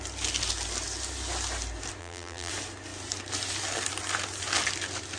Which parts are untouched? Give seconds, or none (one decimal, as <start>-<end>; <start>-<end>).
0.0-2.0; 2.5-5.2